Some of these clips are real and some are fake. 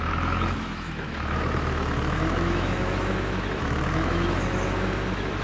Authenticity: fake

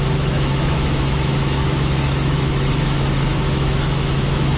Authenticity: fake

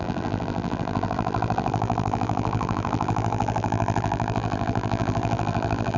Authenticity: fake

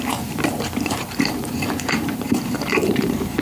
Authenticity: fake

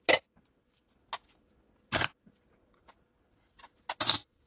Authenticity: real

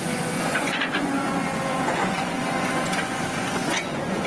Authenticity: fake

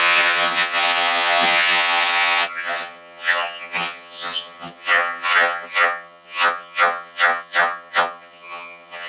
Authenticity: fake